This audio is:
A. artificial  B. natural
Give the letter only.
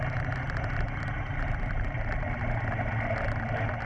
B